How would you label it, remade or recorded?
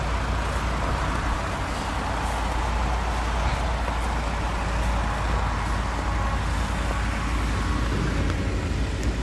recorded